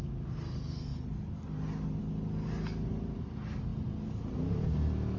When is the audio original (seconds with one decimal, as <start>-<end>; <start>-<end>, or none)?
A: 0.0-5.2